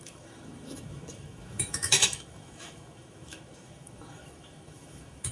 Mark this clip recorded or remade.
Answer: remade